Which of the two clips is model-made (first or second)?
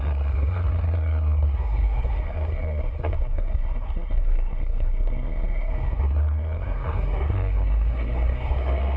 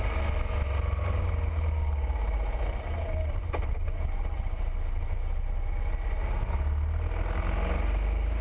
first